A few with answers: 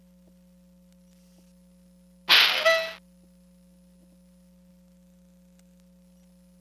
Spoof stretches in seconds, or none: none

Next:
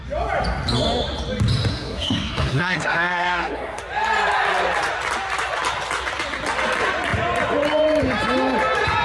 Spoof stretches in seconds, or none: 1.7-3.8

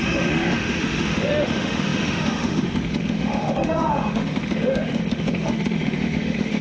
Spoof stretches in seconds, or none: 0.0-6.6

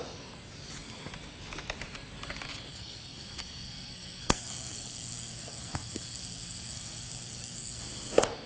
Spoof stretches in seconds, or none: 2.7-7.8

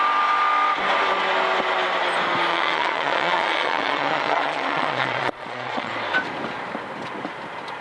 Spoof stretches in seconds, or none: 2.5-5.9

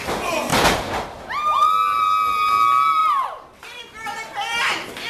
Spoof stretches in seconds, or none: 3.0-3.8